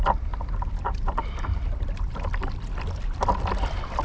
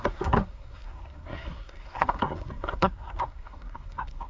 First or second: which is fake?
second